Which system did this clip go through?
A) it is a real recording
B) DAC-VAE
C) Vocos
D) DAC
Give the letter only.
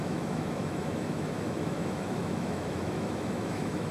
B